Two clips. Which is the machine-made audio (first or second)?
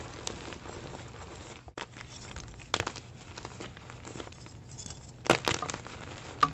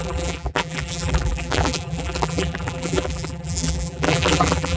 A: second